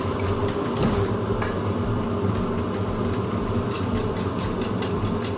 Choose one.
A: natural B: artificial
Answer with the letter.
B